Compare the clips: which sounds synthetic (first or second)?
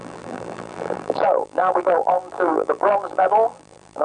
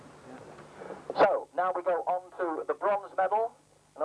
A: first